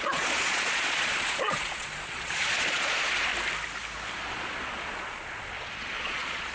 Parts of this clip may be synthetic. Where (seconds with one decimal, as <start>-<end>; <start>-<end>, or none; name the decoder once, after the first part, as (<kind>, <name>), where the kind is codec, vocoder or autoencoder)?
0.0-3.3 (vocoder, Vocos); 4.3-6.5